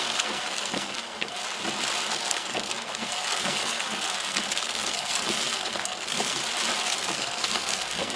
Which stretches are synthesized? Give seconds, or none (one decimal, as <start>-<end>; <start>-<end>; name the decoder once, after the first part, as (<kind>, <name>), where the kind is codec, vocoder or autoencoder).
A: 0.0-1.4 (codec, SNAC); 2.1-6.4; 6.9-8.2